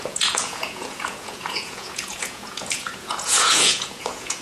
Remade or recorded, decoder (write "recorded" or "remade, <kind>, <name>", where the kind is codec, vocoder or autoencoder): remade, vocoder, Vocos